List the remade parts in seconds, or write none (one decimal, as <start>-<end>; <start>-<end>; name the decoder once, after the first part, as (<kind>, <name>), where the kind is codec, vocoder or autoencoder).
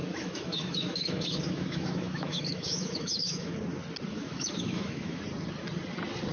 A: 0.0-3.6 (autoencoder, DAC-VAE); 4.1-5.2